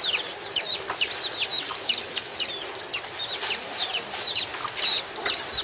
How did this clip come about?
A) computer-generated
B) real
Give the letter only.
B